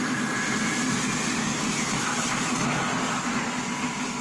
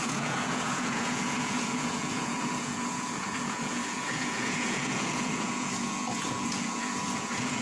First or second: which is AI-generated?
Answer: second